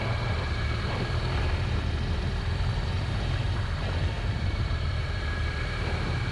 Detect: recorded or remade remade